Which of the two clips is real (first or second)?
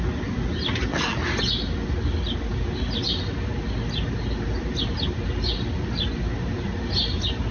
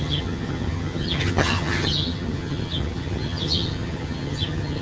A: first